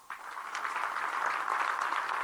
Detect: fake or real fake